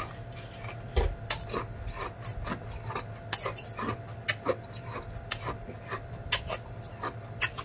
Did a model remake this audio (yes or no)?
no